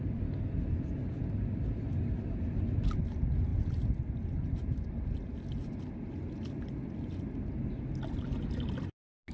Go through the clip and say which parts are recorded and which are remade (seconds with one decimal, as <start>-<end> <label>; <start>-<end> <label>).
0.0-9.3 recorded